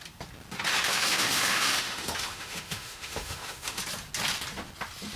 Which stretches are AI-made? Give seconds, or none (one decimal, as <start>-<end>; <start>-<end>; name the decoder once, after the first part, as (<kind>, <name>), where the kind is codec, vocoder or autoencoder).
0.7-3.8 (autoencoder, DAC-VAE)